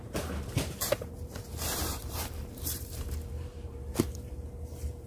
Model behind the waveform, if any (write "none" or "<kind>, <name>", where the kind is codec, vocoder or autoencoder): vocoder, BigVGAN v2